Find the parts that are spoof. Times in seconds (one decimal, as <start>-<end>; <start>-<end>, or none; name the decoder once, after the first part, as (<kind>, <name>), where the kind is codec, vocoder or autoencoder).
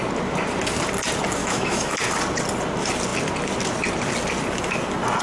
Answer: 1.4-2.0 (autoencoder, DAC-VAE)